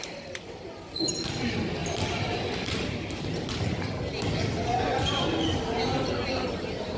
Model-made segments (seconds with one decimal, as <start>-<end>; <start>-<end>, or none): 4.7-5.2